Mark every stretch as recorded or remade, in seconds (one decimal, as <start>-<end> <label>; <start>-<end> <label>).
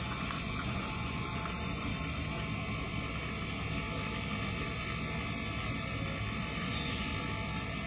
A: 0.0-1.9 remade; 1.9-6.6 recorded; 6.6-7.1 remade; 7.1-7.9 recorded